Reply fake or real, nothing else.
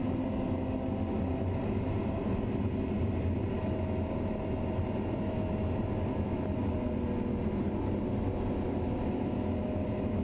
real